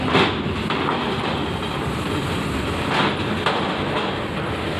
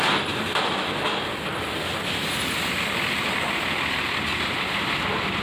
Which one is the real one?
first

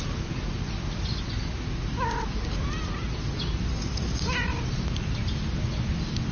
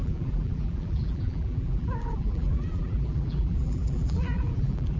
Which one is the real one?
first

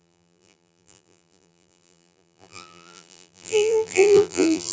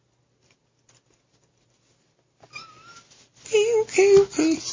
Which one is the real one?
second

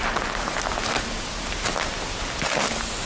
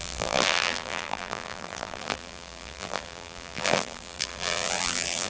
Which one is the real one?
first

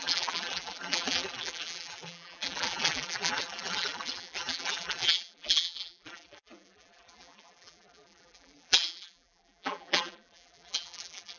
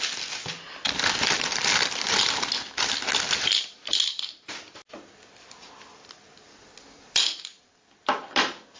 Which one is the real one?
second